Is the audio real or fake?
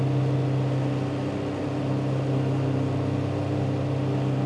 real